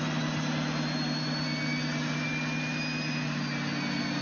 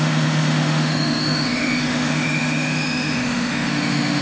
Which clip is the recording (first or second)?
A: first